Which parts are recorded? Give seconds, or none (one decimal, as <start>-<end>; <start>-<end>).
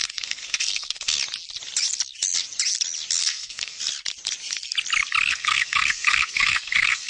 1.2-3.2; 3.8-5.3